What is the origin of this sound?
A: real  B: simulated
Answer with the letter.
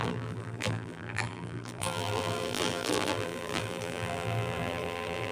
B